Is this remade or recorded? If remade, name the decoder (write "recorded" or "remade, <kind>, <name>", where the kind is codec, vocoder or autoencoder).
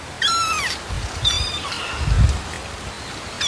recorded